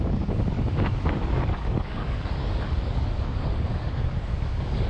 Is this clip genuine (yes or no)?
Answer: no